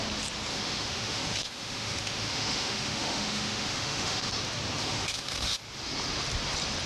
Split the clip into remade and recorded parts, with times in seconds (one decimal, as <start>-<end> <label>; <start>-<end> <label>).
0.0-0.5 recorded; 0.5-4.3 remade; 4.3-4.8 recorded; 4.8-5.6 remade; 5.6-6.9 recorded